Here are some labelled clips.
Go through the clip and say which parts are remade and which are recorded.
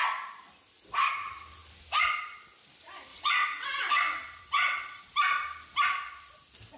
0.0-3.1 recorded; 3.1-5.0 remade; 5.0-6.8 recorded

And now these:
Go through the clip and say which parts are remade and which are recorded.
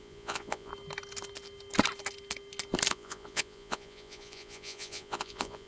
0.0-0.7 remade; 0.7-2.9 recorded; 2.9-5.7 remade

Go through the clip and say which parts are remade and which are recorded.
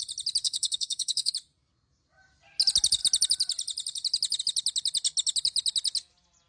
0.0-0.4 recorded; 0.4-1.3 remade; 1.3-6.5 recorded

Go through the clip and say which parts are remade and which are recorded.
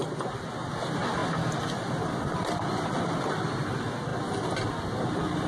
0.0-5.5 recorded